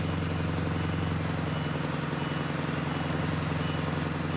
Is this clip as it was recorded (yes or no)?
yes